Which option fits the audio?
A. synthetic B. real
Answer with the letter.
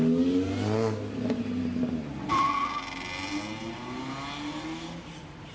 B